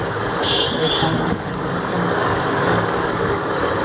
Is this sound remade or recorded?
remade